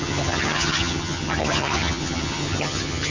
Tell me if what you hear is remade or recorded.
remade